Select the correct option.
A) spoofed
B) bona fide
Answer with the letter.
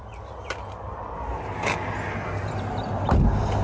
B